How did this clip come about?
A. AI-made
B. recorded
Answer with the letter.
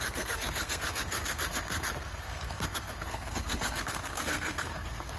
A